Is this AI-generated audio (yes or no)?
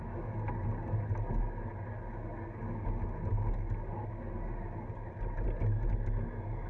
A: no